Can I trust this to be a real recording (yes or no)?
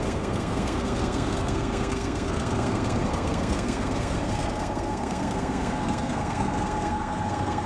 no